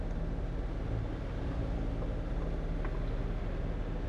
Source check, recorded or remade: recorded